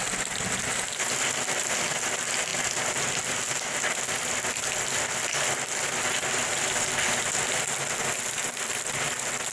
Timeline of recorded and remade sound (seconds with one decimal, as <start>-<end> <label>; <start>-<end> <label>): 0.0-9.5 recorded